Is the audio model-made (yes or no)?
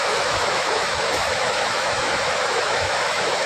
yes